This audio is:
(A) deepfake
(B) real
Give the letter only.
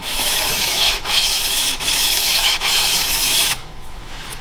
A